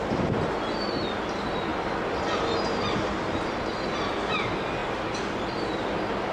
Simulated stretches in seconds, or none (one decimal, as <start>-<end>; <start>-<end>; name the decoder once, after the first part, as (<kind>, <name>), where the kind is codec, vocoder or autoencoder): none